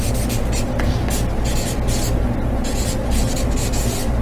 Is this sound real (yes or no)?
yes